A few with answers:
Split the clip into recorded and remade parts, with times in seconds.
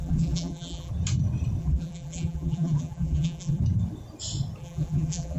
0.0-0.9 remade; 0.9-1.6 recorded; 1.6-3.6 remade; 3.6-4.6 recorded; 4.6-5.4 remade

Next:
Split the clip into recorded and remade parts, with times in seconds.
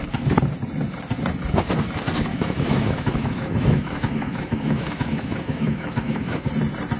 0.0-2.3 recorded; 2.3-6.5 remade; 6.5-7.0 recorded